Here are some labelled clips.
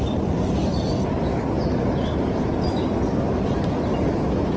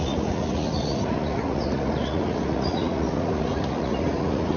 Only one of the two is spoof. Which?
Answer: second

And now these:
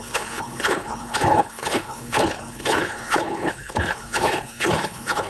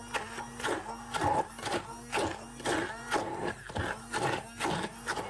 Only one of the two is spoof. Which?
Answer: first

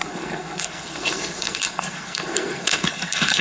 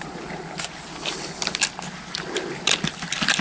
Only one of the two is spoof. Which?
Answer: first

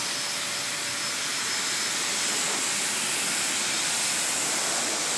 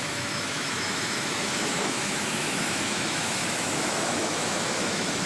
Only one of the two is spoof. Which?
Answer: second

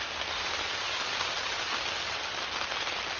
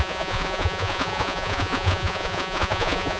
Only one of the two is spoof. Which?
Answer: second